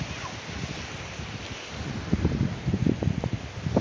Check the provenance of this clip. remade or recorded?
recorded